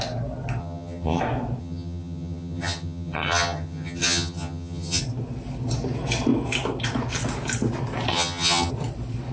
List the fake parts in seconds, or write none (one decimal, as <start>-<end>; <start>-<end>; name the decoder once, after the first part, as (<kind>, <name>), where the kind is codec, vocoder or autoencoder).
0.6-1.2 (vocoder, HiFi-GAN); 1.6-5.0; 8.1-8.7